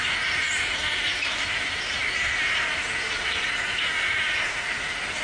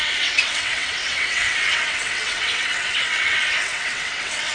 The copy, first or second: second